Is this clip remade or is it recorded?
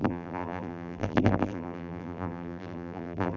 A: remade